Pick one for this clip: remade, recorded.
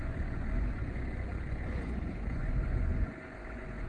remade